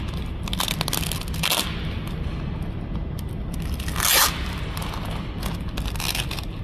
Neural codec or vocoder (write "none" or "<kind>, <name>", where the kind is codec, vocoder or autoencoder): none